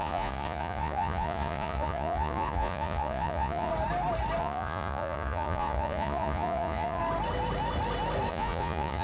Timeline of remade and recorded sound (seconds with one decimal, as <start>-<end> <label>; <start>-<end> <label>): 0.0-3.7 remade; 3.7-4.4 recorded; 4.4-7.0 remade; 7.0-8.3 recorded; 8.3-9.0 remade